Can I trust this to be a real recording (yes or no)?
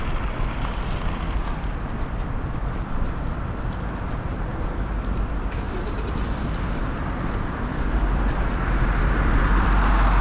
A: no